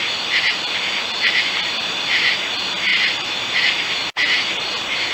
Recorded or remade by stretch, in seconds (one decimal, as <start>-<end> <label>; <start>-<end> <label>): 0.0-2.9 recorded; 2.9-3.6 remade; 3.6-5.1 recorded